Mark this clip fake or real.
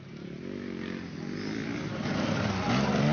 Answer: real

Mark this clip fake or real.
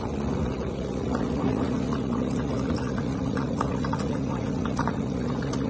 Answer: fake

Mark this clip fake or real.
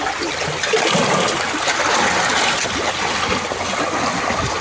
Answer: real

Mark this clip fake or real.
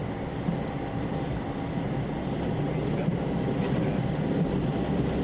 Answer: real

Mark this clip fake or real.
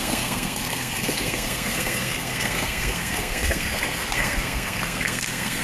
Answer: fake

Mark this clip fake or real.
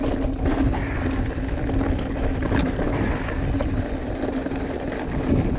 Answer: real